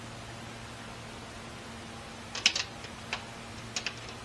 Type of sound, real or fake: real